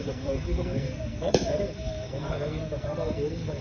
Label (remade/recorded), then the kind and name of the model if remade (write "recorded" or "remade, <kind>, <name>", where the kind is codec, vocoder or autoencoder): remade, codec, SNAC